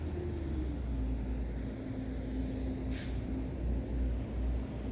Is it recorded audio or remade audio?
recorded